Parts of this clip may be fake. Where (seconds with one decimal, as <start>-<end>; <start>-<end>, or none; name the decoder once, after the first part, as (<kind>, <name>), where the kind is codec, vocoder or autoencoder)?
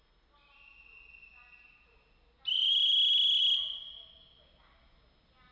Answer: none